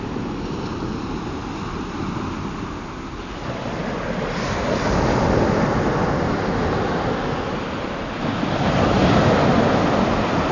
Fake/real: real